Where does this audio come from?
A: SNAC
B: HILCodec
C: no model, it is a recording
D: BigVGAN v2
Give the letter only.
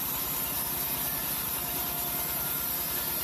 D